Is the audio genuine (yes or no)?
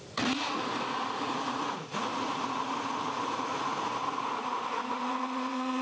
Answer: no